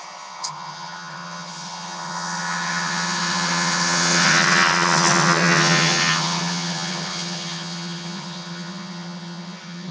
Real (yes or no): no